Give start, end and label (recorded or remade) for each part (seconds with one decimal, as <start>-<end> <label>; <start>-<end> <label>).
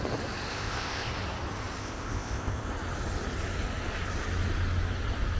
0.0-0.5 recorded; 0.5-1.1 remade; 1.1-1.8 recorded; 1.8-2.7 remade; 2.7-5.4 recorded